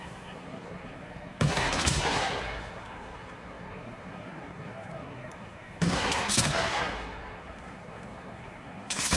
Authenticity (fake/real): fake